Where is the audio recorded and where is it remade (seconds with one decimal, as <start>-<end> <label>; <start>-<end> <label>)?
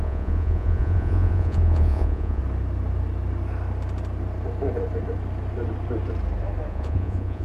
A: 0.0-2.4 remade; 2.4-6.7 recorded; 6.7-7.4 remade